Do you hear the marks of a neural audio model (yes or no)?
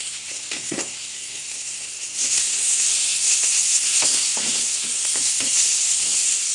yes